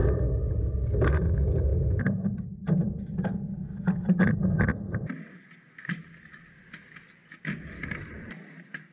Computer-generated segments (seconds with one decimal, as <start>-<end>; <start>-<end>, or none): none